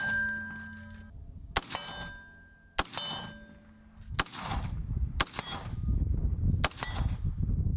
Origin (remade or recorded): recorded